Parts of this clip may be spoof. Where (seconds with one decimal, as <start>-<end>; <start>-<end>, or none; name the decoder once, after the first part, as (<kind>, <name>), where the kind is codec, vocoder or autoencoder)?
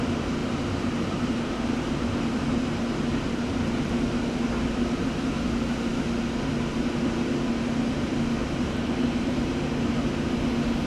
0.4-3.5 (vocoder, BigVGAN v2); 8.4-9.5